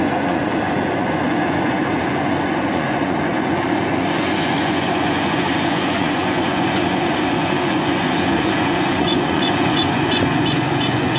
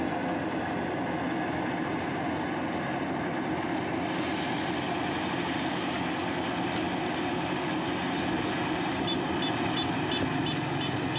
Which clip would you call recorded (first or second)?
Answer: second